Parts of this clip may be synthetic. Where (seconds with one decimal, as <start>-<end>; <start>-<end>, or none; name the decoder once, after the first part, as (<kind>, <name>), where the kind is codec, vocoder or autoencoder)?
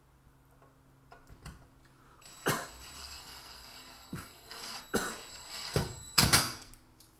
3.0-4.8 (codec, SNAC); 5.3-6.7